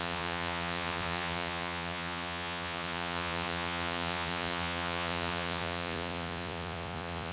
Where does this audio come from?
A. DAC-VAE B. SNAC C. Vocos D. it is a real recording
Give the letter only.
C